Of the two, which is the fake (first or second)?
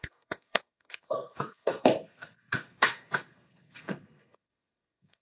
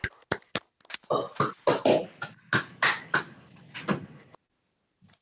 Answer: first